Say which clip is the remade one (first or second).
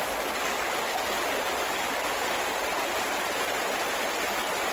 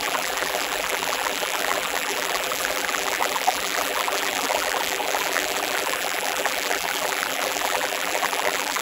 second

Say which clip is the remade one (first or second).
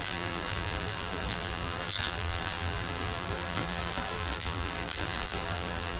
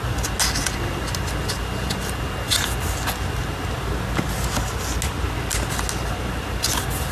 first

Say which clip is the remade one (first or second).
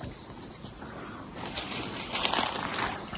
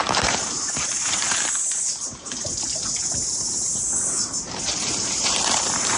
second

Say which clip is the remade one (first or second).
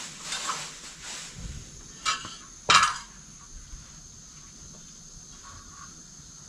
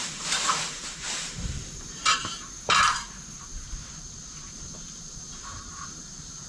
second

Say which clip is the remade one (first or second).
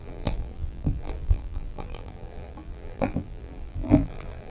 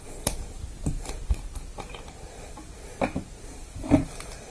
first